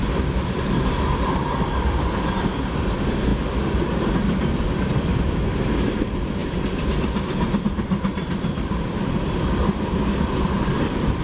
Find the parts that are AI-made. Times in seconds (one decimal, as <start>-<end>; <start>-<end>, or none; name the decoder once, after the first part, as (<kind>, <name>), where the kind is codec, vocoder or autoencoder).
0.0-11.2 (vocoder, BigVGAN v2)